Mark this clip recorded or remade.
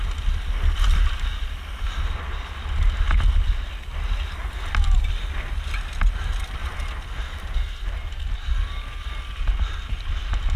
recorded